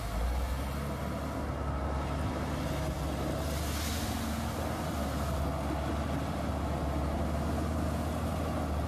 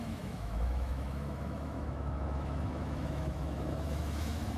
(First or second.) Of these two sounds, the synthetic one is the second